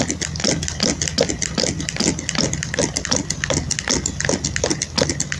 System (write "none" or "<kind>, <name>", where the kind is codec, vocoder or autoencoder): none